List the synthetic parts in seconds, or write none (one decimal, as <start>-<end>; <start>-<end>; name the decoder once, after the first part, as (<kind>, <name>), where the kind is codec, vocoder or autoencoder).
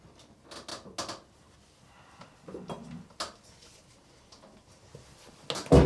none